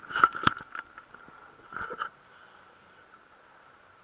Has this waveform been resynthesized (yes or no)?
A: no